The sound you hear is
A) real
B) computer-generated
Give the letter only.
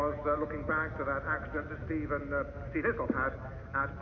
A